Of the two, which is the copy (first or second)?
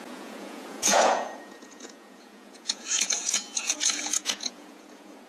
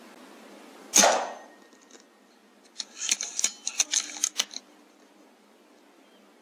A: first